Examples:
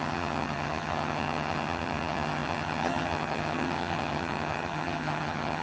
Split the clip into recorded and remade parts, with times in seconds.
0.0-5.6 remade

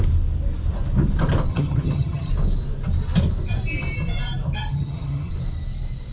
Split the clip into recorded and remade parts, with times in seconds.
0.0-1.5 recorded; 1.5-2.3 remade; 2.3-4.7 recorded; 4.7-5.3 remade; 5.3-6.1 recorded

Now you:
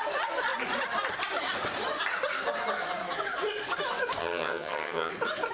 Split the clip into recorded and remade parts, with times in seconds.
0.0-4.2 recorded; 4.2-5.1 remade; 5.1-5.5 recorded

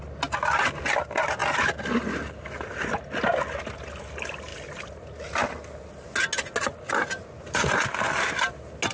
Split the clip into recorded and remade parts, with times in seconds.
0.0-8.9 recorded